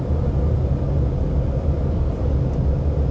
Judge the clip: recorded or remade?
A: recorded